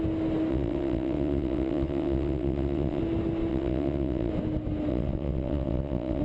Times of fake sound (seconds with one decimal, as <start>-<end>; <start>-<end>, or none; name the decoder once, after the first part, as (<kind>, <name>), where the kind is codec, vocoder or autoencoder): 0.5-3.0 (vocoder, WaveNeXt); 3.5-4.3; 4.9-6.2